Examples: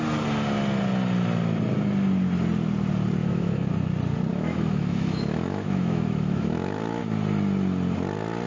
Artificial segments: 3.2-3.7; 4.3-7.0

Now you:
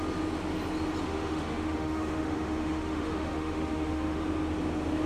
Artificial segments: 1.1-4.2

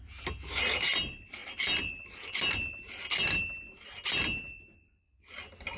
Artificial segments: none

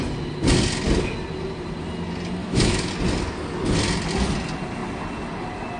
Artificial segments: 2.4-2.9

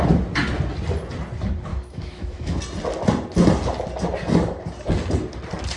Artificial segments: 1.7-2.6

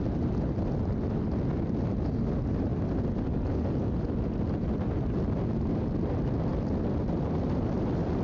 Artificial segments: none

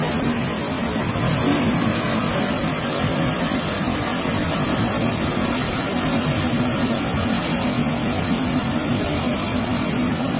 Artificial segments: none